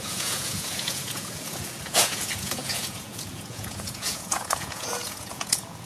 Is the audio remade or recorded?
remade